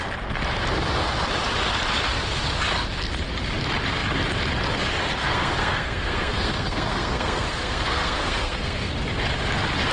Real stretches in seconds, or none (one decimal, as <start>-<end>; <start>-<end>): 0.0-5.2; 8.9-9.9